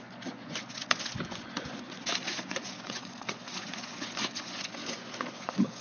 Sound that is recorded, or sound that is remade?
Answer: remade